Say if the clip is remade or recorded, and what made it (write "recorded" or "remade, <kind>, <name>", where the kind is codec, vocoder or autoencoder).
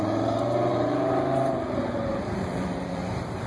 remade, vocoder, BigVGAN v2